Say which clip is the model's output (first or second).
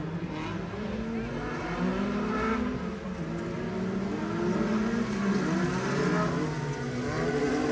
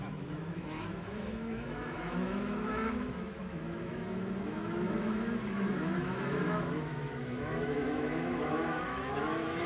second